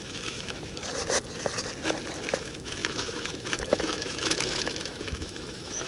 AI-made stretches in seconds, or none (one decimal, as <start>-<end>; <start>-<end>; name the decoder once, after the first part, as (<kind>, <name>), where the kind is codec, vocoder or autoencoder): 0.0-0.8 (autoencoder, DAC-VAE); 2.4-5.9